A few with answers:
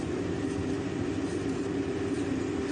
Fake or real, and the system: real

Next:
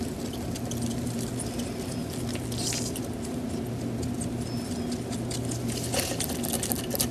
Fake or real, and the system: real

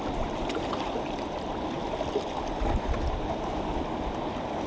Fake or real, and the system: real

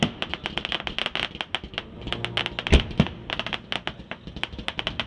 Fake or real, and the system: real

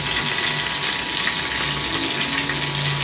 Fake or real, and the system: real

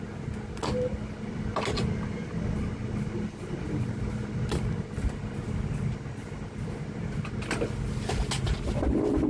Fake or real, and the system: real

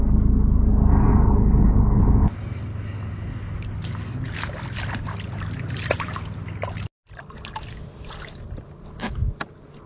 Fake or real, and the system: real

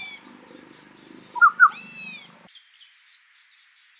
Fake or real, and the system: real